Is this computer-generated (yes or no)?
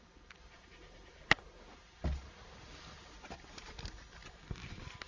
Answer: no